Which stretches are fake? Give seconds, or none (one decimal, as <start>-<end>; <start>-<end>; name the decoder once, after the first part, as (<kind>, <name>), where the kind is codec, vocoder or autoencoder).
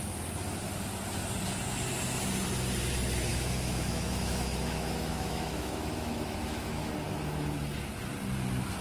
3.3-6.9 (autoencoder, DAC-VAE)